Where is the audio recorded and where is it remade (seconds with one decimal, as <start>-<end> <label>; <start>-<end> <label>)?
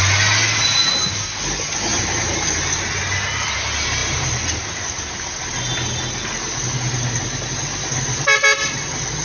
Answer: 0.0-1.9 recorded; 1.9-2.8 remade; 2.8-4.0 recorded; 4.0-4.9 remade; 4.9-9.2 recorded